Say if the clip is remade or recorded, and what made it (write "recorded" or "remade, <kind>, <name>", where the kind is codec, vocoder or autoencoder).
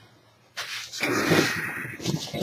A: recorded